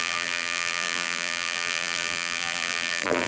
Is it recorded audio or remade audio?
remade